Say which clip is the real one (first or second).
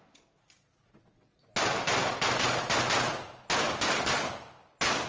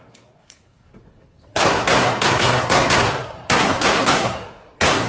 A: first